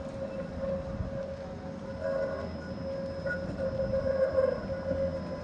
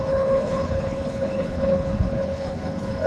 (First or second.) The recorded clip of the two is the first